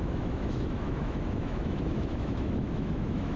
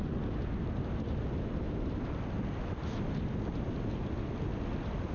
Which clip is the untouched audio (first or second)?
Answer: second